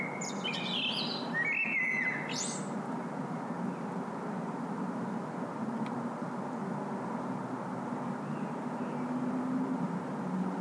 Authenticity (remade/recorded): recorded